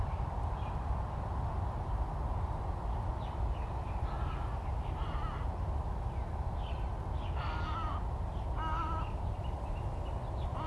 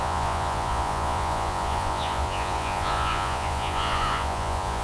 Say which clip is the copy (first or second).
second